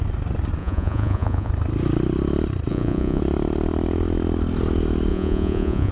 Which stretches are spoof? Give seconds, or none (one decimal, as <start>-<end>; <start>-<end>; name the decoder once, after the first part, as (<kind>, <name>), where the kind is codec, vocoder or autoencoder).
0.6-1.5 (vocoder, Vocos); 2.7-3.2; 5.1-5.9